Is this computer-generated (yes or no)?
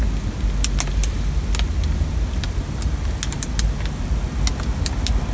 no